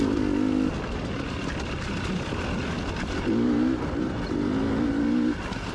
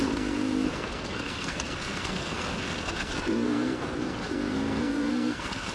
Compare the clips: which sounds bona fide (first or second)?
first